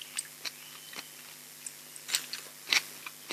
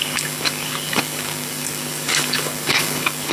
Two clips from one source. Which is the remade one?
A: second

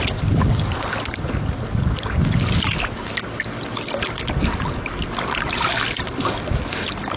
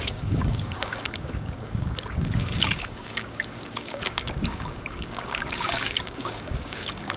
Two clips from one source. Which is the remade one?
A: second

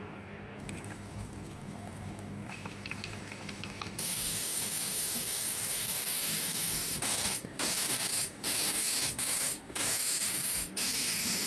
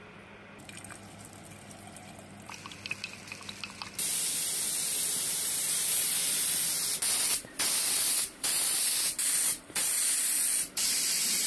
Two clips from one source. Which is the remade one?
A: first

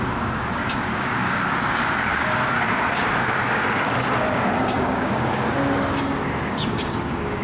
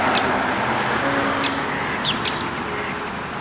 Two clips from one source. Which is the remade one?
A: first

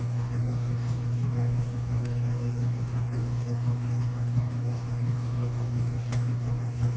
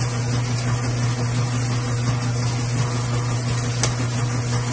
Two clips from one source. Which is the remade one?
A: first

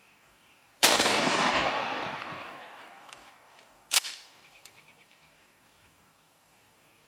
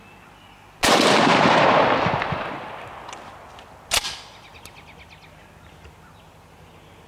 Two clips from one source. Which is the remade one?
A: first